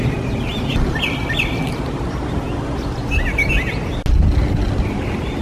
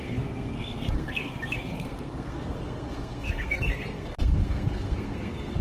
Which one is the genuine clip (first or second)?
first